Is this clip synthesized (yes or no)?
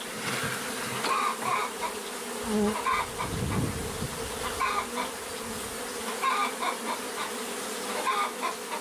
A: no